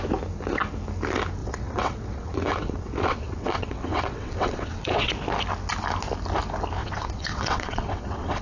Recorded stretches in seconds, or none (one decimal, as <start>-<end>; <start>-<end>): 0.0-1.4; 5.1-6.8